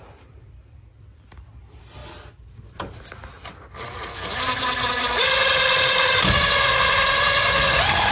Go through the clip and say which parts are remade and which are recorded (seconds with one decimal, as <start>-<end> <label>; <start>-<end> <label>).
0.0-8.1 recorded